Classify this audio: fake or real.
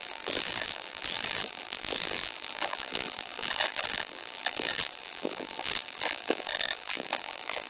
fake